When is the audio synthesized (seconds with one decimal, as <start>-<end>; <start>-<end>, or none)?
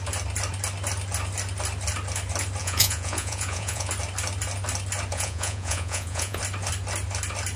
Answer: 2.6-3.9; 5.1-6.4